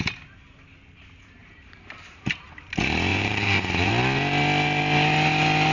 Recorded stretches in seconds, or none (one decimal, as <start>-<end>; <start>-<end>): 0.0-1.4; 2.7-3.1; 3.9-5.7